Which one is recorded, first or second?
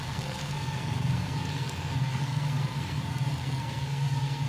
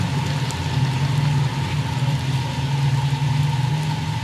second